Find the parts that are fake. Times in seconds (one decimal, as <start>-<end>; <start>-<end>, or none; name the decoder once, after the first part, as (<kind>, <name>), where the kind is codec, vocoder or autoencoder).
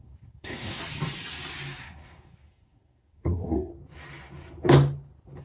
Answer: 0.0-0.8 (codec, SNAC); 1.8-3.7